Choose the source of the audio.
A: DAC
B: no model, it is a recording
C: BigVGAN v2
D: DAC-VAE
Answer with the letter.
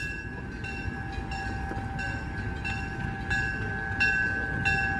B